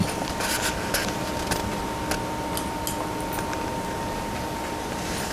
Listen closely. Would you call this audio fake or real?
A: real